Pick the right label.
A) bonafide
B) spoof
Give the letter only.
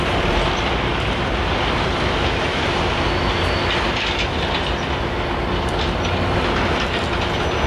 A